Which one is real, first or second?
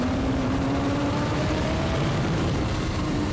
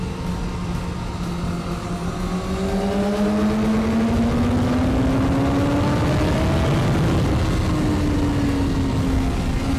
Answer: second